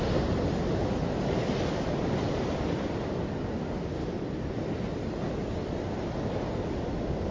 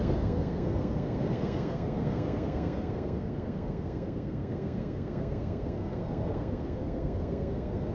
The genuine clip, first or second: first